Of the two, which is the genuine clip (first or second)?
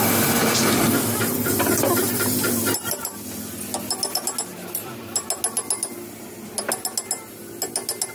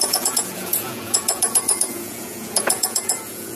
first